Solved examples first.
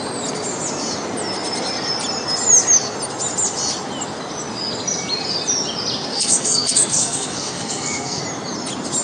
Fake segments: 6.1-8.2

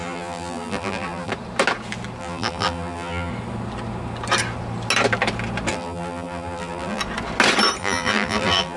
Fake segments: 0.0-1.3; 2.2-3.3; 5.7-7.0; 7.8-8.8

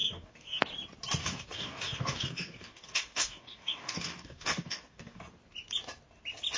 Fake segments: 0.0-0.6; 1.2-5.2

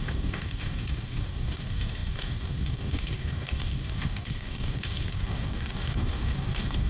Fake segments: 0.0-6.9